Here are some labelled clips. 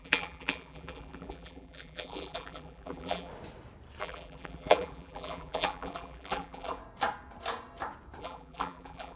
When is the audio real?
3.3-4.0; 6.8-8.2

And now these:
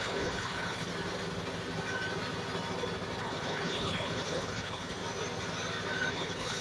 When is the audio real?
0.9-3.2; 5.0-6.1

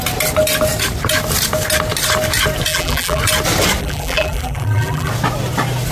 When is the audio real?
0.0-2.7; 3.2-3.8; 5.1-5.9

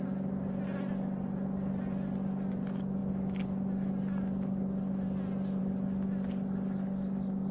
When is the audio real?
0.0-7.5

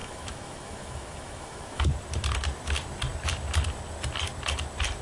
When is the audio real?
1.9-5.0

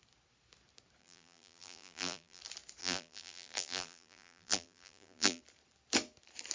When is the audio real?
0.0-1.0; 2.4-2.8; 5.4-6.5

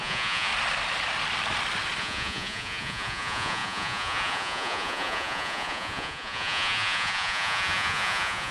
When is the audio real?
0.5-2.0